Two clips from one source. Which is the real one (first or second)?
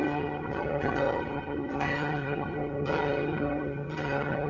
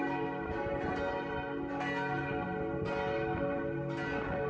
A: second